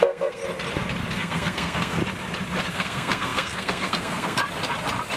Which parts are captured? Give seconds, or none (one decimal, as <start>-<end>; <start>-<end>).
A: 0.4-1.1; 2.0-2.7; 4.4-5.2